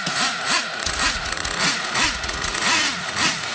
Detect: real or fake fake